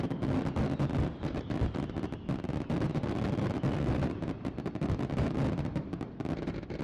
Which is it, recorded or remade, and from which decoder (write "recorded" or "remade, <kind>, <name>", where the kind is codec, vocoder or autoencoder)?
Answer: recorded